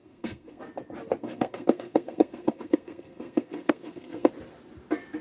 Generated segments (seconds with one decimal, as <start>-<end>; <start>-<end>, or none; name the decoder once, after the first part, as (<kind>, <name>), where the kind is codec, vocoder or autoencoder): 0.0-0.6 (codec, SNAC); 1.2-4.3